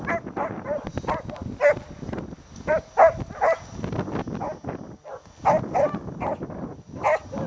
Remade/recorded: recorded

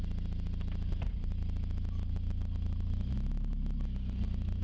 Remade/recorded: recorded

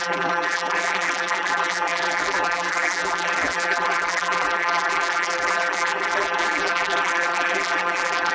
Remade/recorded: remade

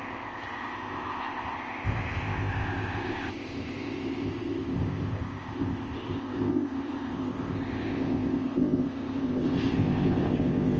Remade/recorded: remade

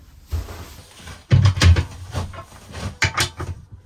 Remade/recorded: recorded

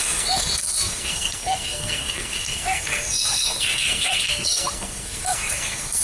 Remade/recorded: remade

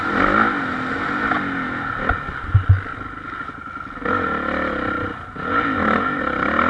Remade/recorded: recorded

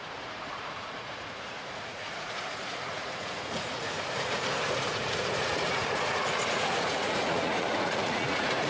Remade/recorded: remade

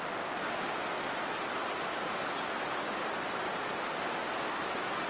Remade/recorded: recorded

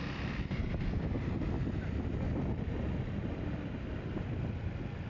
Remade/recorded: recorded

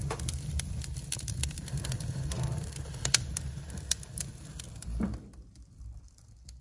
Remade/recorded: remade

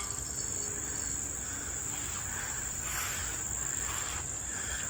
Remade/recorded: recorded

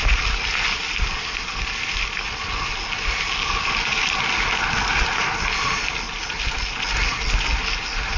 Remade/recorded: recorded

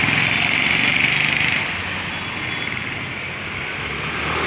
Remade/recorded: recorded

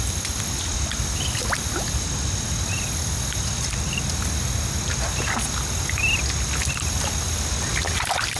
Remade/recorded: recorded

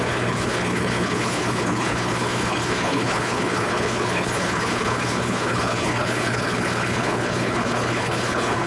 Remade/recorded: remade